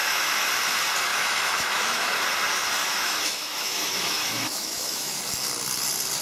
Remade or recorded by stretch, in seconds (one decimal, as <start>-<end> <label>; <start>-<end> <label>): 0.0-0.5 remade; 0.5-1.1 recorded; 1.1-2.2 remade; 2.2-2.8 recorded; 2.8-5.2 remade; 5.2-6.2 recorded